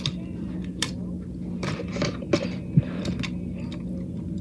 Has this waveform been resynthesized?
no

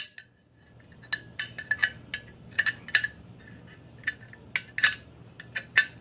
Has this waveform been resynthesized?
no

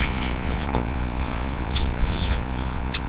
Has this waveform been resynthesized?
yes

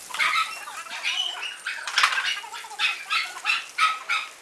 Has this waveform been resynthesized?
no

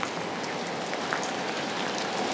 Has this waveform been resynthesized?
no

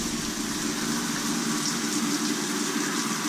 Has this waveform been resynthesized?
no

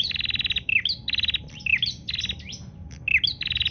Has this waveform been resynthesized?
no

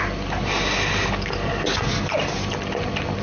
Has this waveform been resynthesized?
no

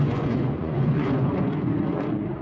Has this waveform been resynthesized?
yes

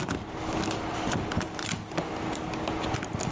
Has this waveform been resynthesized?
no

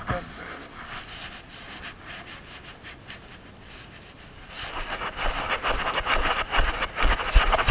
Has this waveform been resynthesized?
no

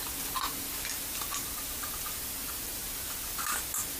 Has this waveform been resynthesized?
no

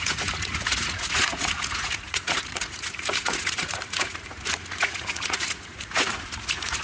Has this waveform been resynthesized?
yes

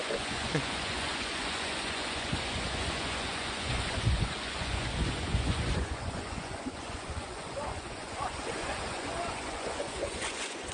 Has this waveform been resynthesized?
yes